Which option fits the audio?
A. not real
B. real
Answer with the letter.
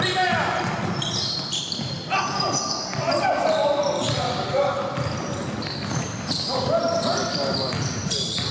A